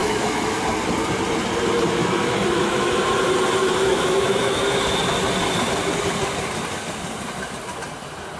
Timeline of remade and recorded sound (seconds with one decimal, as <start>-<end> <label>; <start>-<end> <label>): 0.0-0.6 remade; 0.6-2.0 recorded; 2.0-2.9 remade; 2.9-3.6 recorded; 3.6-4.6 remade; 4.6-8.4 recorded